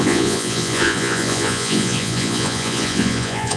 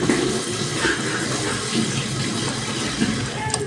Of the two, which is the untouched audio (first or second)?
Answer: second